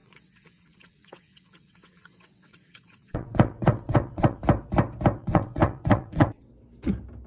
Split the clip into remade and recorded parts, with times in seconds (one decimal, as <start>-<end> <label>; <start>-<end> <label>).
0.0-4.4 remade; 4.4-5.2 recorded; 5.2-6.5 remade; 6.5-7.3 recorded